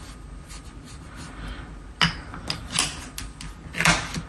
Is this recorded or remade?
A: recorded